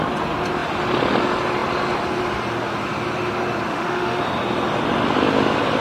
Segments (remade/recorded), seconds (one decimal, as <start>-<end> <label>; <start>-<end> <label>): 0.0-3.7 recorded; 3.7-4.2 remade; 4.2-5.8 recorded